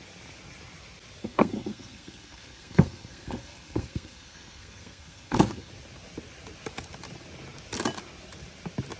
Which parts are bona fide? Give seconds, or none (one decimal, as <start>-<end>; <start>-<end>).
0.0-1.2; 5.7-9.0